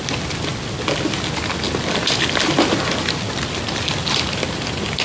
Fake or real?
real